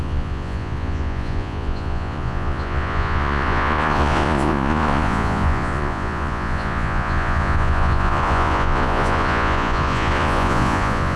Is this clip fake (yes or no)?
yes